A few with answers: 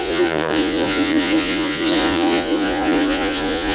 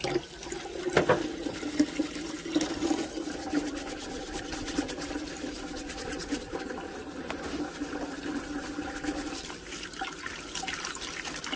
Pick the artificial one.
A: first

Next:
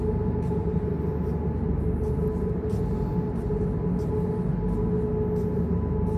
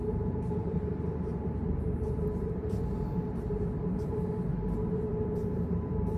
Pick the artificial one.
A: second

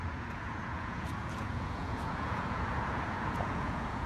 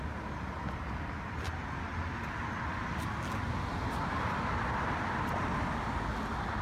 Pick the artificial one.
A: first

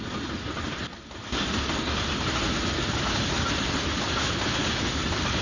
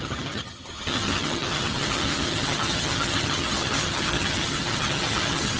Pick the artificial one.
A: second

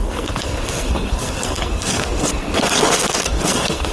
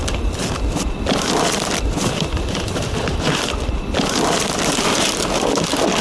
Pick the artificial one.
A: first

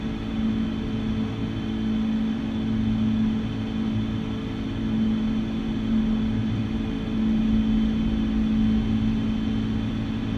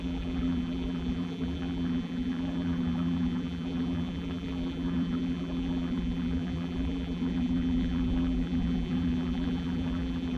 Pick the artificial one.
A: second